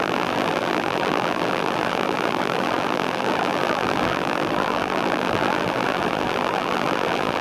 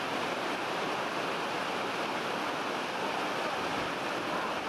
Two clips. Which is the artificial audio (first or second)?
first